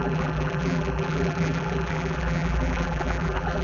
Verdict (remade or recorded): remade